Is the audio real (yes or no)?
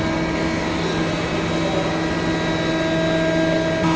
yes